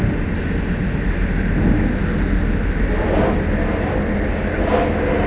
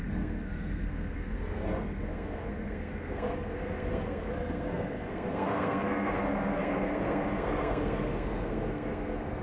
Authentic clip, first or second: first